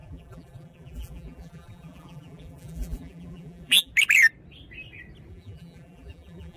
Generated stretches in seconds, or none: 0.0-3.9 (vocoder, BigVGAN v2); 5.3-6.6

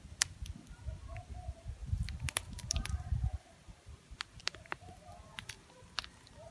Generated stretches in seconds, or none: 1.8-5.7 (vocoder, BigVGAN v2)

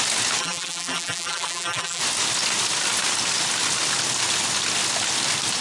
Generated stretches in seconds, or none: 0.4-2.0 (vocoder, BigVGAN v2)

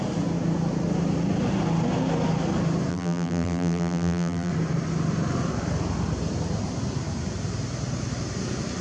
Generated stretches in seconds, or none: 2.9-4.5 (vocoder, BigVGAN v2)

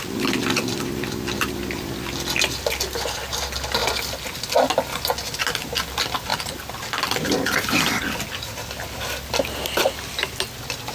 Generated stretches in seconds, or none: none

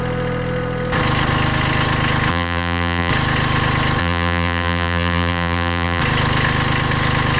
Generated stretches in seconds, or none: 2.3-3.1 (vocoder, BigVGAN v2); 4.0-6.0

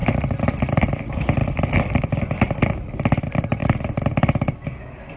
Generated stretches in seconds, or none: 0.0-0.5 (vocoder, BigVGAN v2); 1.4-2.7; 3.6-4.2

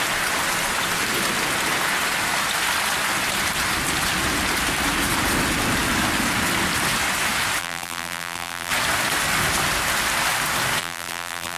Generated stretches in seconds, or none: 7.6-8.7 (vocoder, BigVGAN v2); 10.8-11.6